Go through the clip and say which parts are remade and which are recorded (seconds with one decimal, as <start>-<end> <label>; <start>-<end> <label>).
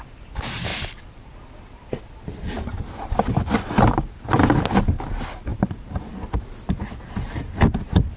0.0-5.5 recorded; 5.5-6.1 remade; 6.1-8.2 recorded